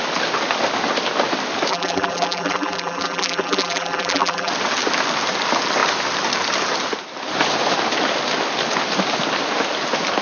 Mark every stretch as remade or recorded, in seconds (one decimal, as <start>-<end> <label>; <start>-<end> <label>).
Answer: 0.0-1.7 recorded; 1.7-4.5 remade; 4.5-10.2 recorded